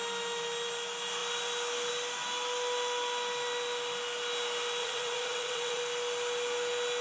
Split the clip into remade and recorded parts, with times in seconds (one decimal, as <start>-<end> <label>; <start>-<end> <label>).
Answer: 0.0-4.8 recorded; 4.8-5.8 remade; 5.8-7.0 recorded

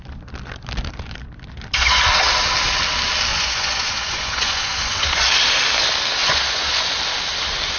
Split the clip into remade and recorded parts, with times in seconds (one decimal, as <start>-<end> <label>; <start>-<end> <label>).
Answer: 0.0-3.3 recorded; 3.3-5.2 remade; 5.2-6.2 recorded; 6.2-6.9 remade; 6.9-7.8 recorded

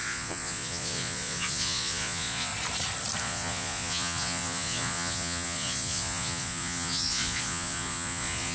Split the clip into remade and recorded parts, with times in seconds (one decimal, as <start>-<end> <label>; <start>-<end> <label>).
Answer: 0.0-2.5 remade; 2.5-3.2 recorded; 3.2-8.5 remade